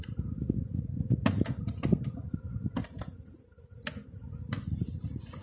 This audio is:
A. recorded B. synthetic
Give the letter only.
A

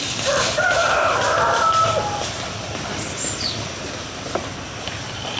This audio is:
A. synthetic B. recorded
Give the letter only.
B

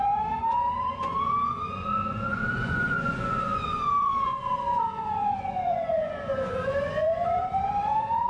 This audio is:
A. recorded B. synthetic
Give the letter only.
B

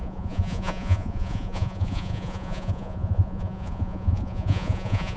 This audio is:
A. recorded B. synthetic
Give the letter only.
B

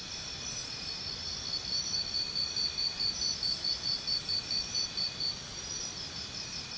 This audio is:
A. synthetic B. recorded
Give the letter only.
B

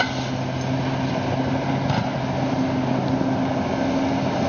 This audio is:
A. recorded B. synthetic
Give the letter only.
A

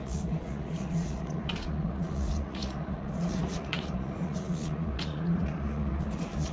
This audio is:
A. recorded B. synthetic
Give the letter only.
B